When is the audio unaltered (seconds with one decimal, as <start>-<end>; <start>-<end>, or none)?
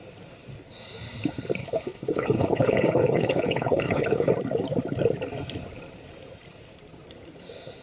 0.0-1.6; 4.3-7.8